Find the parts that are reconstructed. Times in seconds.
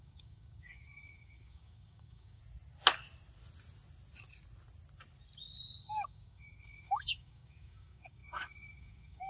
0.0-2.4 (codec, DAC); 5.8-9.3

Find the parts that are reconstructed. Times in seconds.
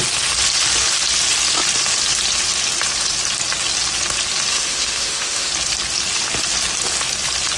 4.5-5.5 (autoencoder, DAC-VAE)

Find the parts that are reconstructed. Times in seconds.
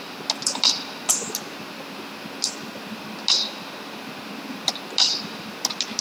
none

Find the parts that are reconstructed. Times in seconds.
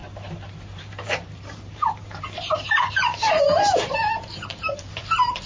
0.0-5.5 (vocoder, BigVGAN v2)